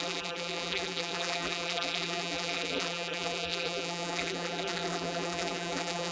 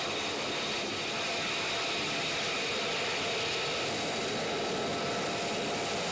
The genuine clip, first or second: second